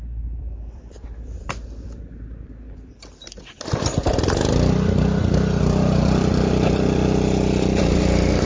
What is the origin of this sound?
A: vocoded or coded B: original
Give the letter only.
A